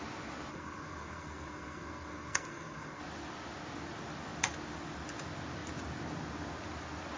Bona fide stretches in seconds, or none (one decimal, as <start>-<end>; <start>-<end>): 0.0-0.5; 3.0-7.2